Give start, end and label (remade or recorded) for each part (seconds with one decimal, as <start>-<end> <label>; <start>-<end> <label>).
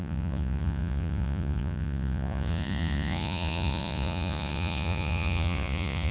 0.0-6.1 remade